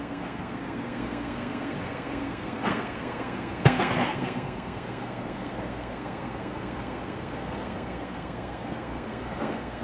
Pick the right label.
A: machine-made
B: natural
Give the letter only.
A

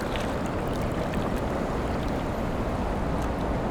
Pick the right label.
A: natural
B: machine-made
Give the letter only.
A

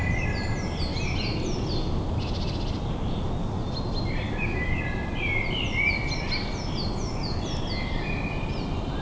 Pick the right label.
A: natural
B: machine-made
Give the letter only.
A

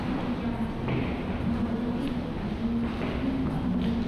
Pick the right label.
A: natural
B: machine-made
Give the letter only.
A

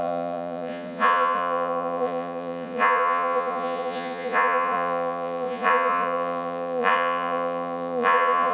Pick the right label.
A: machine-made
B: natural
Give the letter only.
A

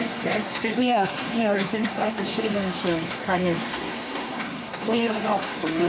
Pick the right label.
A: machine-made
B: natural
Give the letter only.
A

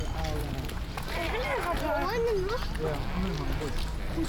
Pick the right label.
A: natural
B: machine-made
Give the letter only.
A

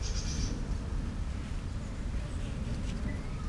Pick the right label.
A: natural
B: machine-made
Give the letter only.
A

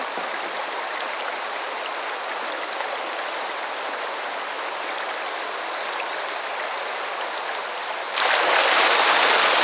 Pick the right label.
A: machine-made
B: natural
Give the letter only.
B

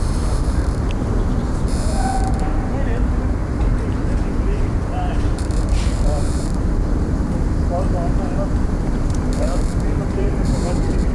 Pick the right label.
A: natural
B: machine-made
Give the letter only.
B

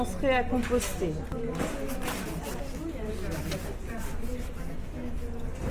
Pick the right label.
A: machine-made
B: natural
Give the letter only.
B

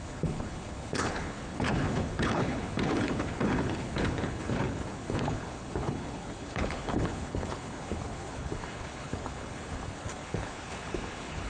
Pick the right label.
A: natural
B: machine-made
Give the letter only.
B